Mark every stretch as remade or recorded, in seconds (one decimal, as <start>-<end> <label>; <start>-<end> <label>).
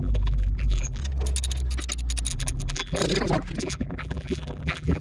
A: 0.0-1.0 remade; 1.0-2.3 recorded; 2.3-3.0 remade; 3.0-3.6 recorded; 3.6-5.0 remade